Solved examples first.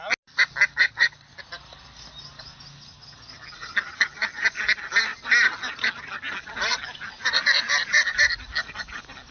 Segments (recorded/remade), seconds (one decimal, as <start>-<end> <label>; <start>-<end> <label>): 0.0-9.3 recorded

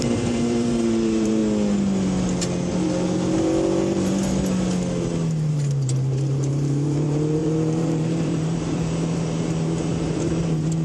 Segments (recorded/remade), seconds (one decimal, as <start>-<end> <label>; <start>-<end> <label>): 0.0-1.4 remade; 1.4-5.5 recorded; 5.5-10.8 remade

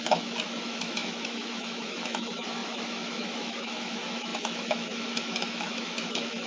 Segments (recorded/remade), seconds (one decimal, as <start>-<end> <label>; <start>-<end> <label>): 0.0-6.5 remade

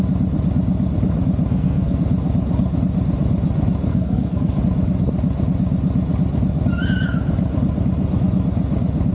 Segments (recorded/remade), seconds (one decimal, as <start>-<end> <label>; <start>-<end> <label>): 0.0-1.5 recorded; 1.5-2.0 remade; 2.0-3.9 recorded; 3.9-4.6 remade; 4.6-9.1 recorded